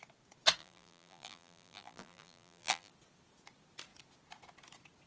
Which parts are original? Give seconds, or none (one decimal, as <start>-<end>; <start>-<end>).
0.0-0.6; 2.9-5.1